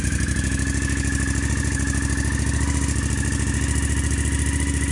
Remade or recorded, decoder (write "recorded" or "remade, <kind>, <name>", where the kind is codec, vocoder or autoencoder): recorded